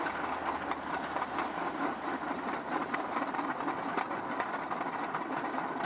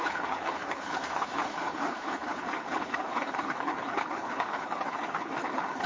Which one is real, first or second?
first